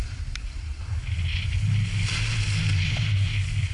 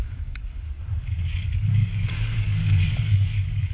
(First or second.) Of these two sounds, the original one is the first